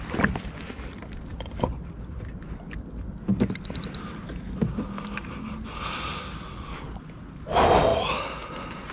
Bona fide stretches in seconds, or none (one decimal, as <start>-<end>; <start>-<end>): 0.0-8.9

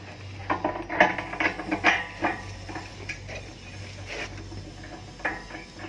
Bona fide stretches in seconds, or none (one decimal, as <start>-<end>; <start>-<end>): 0.0-1.1; 4.6-5.9

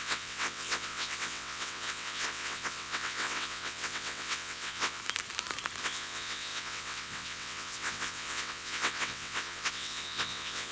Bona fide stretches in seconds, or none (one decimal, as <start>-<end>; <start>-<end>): 5.0-5.8

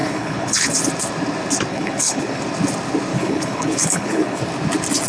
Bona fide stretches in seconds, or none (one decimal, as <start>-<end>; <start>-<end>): 0.7-1.7; 2.4-3.1; 4.4-5.1

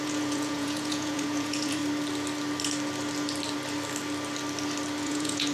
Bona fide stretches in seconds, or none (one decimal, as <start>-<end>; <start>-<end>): 1.8-5.0

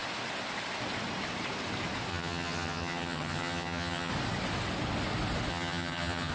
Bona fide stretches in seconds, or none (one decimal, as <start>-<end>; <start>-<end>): 0.0-2.1; 4.1-5.5